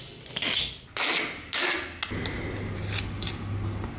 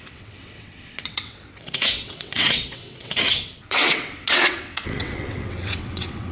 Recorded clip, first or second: first